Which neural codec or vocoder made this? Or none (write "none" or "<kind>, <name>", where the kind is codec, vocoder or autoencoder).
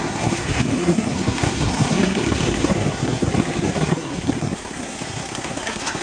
codec, SNAC